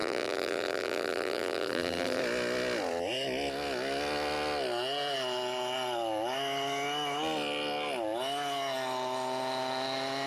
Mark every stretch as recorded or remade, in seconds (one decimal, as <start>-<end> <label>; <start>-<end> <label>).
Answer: 0.0-2.2 remade; 2.2-10.3 recorded